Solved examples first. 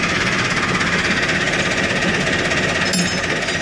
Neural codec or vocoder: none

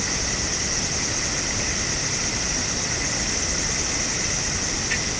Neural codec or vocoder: none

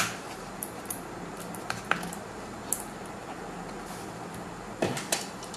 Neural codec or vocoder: none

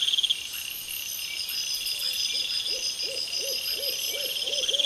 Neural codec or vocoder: none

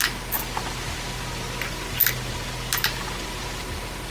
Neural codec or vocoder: none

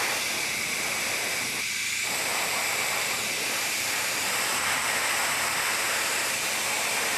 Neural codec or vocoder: vocoder, BigVGAN v2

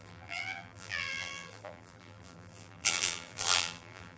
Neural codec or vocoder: vocoder, BigVGAN v2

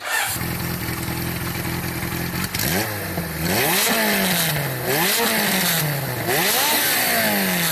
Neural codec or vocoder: none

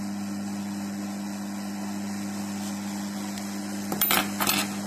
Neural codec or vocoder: none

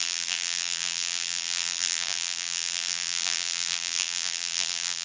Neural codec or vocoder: vocoder, BigVGAN v2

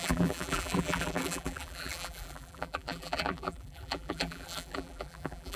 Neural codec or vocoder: vocoder, BigVGAN v2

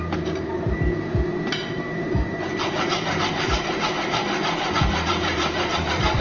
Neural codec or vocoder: vocoder, BigVGAN v2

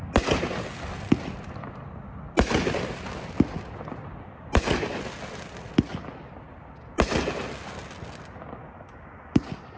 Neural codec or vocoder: none